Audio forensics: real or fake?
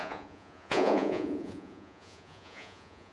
fake